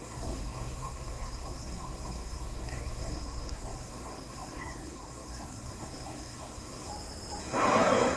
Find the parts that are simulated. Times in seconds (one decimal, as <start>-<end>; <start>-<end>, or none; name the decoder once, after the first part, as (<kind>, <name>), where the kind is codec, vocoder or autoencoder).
0.0-6.9 (codec, SNAC); 7.4-8.2